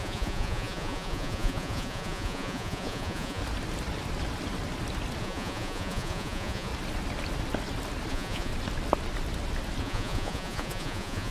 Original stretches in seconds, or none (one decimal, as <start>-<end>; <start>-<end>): 3.4-5.2; 6.7-8.1; 8.5-9.8